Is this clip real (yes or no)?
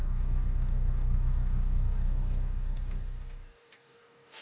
no